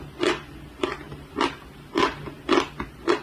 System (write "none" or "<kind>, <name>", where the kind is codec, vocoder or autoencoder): none